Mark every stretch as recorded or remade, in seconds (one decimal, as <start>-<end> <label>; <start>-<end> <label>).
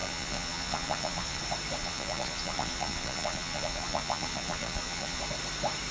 0.0-1.4 remade; 1.4-1.8 recorded; 1.8-5.2 remade; 5.2-5.9 recorded